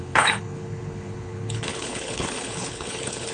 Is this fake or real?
fake